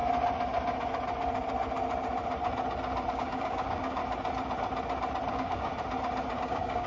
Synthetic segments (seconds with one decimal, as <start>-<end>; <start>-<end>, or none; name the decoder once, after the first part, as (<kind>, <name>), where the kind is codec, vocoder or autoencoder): 3.1-4.0 (codec, DAC); 5.3-5.7; 6.4-6.9